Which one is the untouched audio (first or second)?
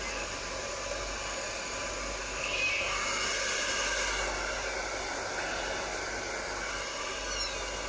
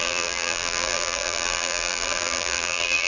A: first